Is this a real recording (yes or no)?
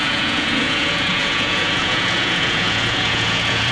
no